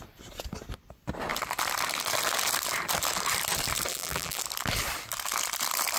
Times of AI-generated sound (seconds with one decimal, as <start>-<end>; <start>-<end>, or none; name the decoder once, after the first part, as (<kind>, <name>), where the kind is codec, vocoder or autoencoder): 3.9-4.4 (vocoder, BigVGAN v2)